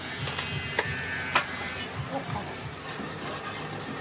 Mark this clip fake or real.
real